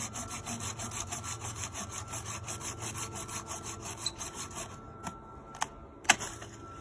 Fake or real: real